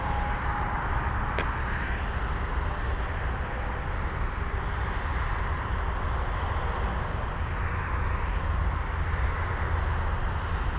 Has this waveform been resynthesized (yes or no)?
no